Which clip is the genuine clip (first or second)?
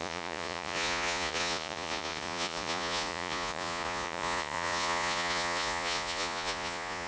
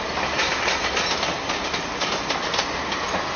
second